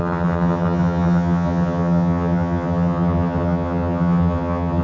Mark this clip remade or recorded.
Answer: remade